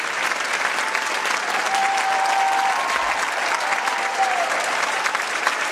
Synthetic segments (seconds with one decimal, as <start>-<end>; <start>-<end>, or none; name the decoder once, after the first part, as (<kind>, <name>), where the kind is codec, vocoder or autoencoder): 0.0-0.5 (vocoder, BigVGAN v2); 3.9-5.7

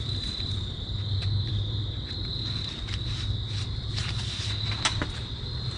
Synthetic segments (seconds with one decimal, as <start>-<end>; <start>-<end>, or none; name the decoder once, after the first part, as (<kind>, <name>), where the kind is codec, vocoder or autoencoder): 0.0-4.0 (vocoder, BigVGAN v2); 5.0-5.8

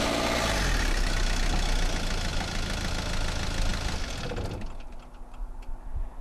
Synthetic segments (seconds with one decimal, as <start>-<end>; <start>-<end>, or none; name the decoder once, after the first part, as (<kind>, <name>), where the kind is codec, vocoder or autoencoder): 2.3-2.9 (vocoder, BigVGAN v2)

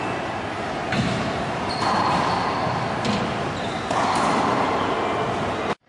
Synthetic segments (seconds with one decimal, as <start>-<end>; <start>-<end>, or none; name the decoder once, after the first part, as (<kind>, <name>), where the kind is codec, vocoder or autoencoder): 0.8-2.7 (vocoder, BigVGAN v2); 4.5-5.0

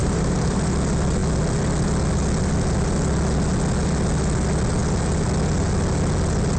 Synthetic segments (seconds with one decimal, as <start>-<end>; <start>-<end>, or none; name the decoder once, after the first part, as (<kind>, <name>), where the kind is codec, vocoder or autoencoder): 0.0-0.6 (vocoder, BigVGAN v2)

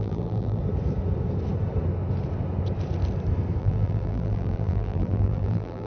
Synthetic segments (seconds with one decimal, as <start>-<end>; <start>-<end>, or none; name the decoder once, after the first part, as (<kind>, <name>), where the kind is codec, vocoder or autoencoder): 0.0-0.6 (vocoder, BigVGAN v2); 3.6-5.9

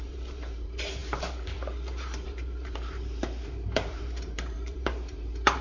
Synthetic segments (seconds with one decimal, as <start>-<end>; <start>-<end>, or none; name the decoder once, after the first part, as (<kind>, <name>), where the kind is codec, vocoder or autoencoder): 0.0-5.6 (vocoder, BigVGAN v2)